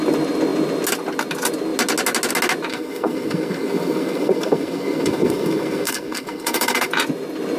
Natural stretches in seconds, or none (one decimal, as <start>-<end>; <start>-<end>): 0.0-2.7; 6.9-7.6